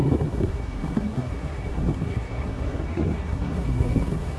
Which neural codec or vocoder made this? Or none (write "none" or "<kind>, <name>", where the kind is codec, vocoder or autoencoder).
codec, SNAC